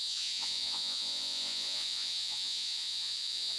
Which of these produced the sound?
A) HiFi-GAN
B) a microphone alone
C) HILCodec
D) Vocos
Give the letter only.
D